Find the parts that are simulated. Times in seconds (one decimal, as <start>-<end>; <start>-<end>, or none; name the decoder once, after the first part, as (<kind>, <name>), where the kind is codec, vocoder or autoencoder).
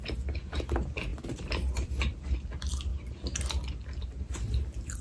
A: 1.1-1.9 (vocoder, BigVGAN v2); 2.9-3.4